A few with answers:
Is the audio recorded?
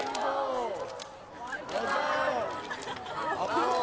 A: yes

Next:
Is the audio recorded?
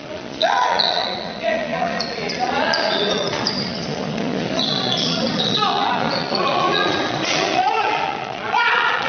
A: no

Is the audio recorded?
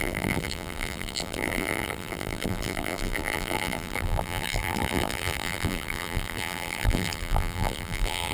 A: no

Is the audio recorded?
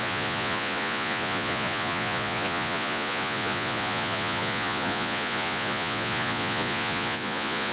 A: no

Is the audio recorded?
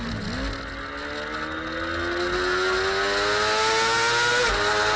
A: yes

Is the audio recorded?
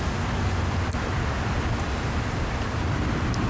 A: yes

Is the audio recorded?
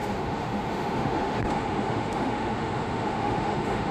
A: no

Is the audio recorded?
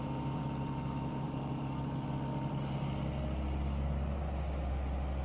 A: yes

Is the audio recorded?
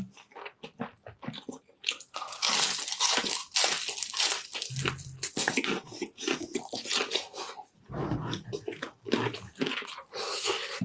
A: yes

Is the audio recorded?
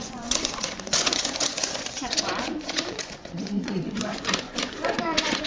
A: no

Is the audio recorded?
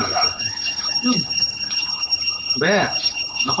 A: no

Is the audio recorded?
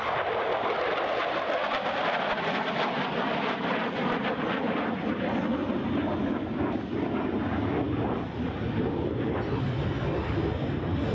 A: yes